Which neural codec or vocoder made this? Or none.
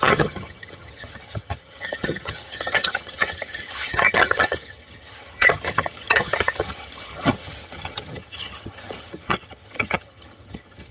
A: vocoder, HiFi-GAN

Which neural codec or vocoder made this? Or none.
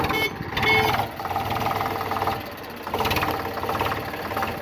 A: none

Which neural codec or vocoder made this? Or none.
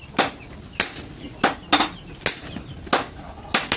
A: none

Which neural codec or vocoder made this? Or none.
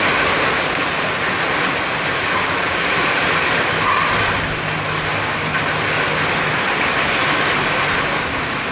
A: none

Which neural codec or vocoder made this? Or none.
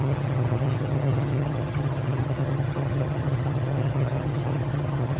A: vocoder, HiFi-GAN